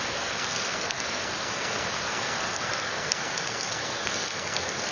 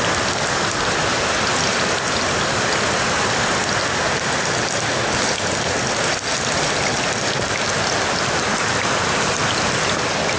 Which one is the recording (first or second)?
second